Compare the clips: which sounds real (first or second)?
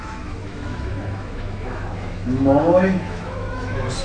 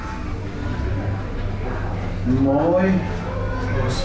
second